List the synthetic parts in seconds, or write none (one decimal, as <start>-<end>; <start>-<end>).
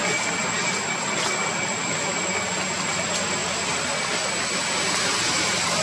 none